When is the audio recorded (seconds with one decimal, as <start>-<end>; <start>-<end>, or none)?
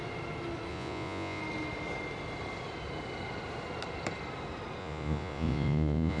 0.0-0.7; 1.4-4.8